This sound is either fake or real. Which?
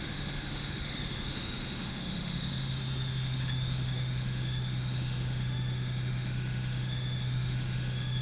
fake